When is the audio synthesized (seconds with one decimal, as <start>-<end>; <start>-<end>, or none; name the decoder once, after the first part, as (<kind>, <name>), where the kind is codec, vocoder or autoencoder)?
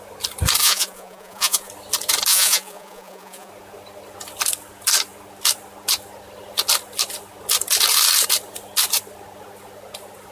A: 0.6-1.7 (vocoder, Vocos); 2.3-3.5